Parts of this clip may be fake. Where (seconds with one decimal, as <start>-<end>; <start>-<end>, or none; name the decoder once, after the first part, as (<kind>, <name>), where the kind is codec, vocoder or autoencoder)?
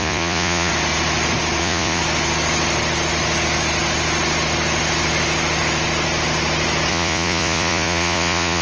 0.0-0.7 (vocoder, Vocos); 1.6-2.0; 6.9-8.6